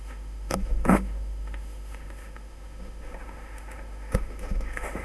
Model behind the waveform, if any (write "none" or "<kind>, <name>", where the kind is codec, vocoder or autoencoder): autoencoder, DAC-VAE